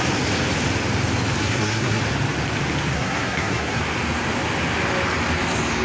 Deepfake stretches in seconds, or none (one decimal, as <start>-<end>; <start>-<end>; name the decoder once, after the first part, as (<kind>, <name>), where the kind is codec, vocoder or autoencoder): 1.4-2.0 (codec, SNAC); 2.9-3.8